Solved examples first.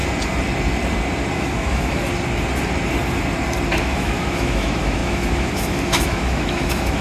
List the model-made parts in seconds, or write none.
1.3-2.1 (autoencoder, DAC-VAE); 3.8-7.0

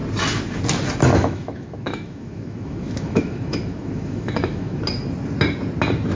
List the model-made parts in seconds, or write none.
1.1-4.8 (autoencoder, DAC-VAE)

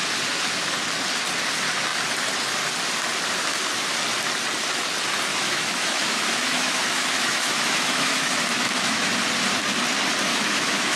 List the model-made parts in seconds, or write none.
5.3-9.1 (autoencoder, DAC-VAE); 10.3-11.0